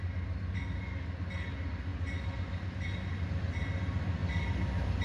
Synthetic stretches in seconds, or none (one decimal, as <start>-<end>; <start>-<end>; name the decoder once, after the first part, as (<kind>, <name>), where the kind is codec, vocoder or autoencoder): none